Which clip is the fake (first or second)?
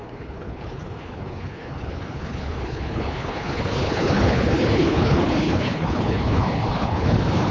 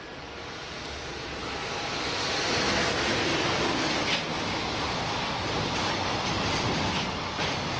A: first